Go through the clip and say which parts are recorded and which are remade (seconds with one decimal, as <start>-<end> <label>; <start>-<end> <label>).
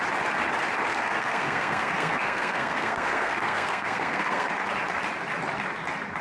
0.0-0.9 recorded; 0.9-4.5 remade; 4.5-6.2 recorded